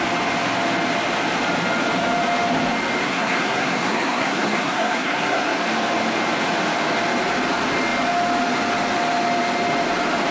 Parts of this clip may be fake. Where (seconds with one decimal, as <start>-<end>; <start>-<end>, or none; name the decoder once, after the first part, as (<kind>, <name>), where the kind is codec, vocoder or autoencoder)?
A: 3.0-5.6 (codec, SNAC)